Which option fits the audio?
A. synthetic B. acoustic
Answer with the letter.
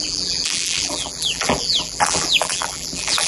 A